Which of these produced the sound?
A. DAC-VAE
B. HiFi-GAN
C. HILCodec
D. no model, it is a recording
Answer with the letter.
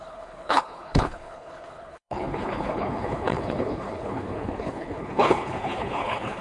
C